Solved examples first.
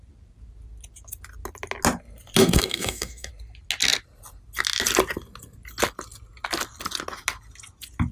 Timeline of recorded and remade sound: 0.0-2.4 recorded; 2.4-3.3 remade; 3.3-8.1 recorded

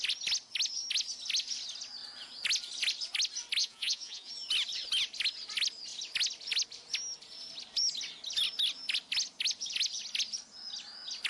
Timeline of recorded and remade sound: 0.0-3.6 recorded; 3.6-4.3 remade; 4.3-11.3 recorded

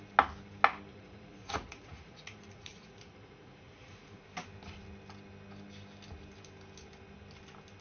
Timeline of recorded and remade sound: 0.0-0.9 recorded; 0.9-4.2 remade; 4.2-7.8 recorded

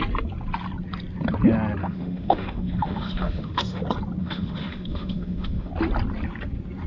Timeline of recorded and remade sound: 0.0-1.8 recorded; 1.8-3.8 remade; 3.8-4.2 recorded; 4.2-5.7 remade; 5.7-6.9 recorded

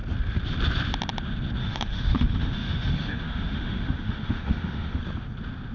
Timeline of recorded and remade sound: 0.0-1.6 recorded; 1.6-5.0 remade; 5.0-5.7 recorded

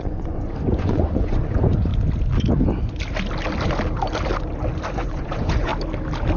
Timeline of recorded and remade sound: 0.0-1.9 remade; 1.9-4.9 recorded; 4.9-5.7 remade; 5.7-6.4 recorded

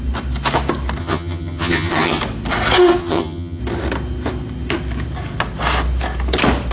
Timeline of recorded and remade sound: 0.0-1.0 recorded; 1.0-2.2 remade; 2.2-3.0 recorded; 3.0-3.6 remade; 3.6-6.7 recorded

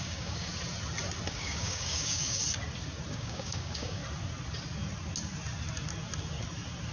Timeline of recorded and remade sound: 0.0-0.5 remade; 0.5-1.3 recorded; 1.3-2.4 remade; 2.4-3.1 recorded; 3.1-4.0 remade; 4.0-6.9 recorded